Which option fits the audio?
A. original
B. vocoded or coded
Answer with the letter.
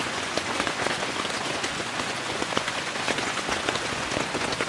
B